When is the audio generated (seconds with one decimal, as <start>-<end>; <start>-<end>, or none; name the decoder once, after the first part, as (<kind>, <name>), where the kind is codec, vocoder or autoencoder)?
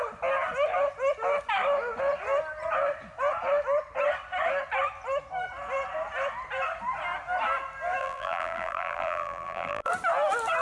8.0-9.9 (vocoder, BigVGAN v2)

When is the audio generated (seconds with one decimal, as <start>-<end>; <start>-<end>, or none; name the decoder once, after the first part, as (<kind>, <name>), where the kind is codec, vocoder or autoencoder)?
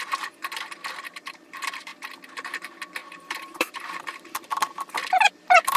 0.0-0.4 (vocoder, BigVGAN v2); 1.0-1.9; 2.5-5.8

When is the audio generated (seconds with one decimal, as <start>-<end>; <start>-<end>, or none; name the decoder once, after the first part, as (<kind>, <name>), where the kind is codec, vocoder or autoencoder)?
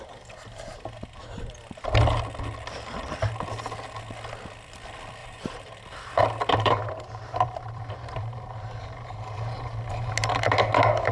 5.2-10.1 (vocoder, BigVGAN v2)